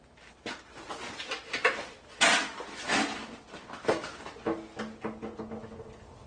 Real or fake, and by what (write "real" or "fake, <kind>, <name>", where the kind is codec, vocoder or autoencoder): real